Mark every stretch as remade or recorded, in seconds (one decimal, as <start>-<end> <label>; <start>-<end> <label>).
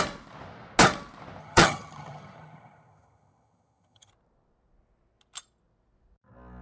0.0-1.4 recorded; 1.4-4.1 remade; 4.1-6.6 recorded